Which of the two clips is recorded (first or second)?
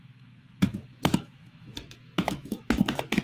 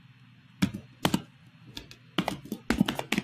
second